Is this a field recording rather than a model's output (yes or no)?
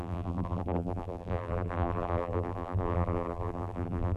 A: no